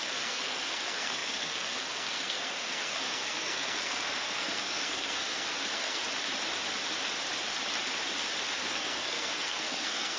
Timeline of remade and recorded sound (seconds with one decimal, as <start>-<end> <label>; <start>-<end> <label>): 0.0-6.0 remade; 6.0-8.7 recorded; 8.7-10.2 remade